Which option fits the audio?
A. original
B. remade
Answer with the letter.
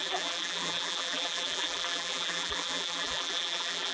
B